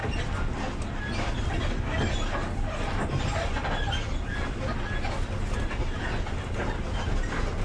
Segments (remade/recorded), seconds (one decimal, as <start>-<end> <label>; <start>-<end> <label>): 0.0-7.6 recorded